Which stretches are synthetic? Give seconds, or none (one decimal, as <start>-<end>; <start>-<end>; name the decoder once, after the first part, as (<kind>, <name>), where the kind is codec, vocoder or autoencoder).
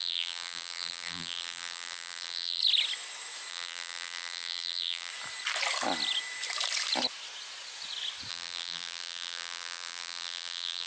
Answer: 0.0-2.6 (vocoder, BigVGAN v2); 3.5-5.1; 8.3-10.9